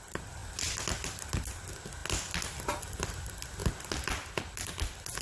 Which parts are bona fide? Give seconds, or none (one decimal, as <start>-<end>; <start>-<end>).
0.0-5.2